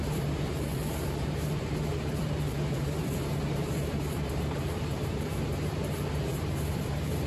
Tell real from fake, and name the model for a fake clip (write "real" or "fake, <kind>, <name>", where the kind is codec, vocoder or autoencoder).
fake, vocoder, BigVGAN v2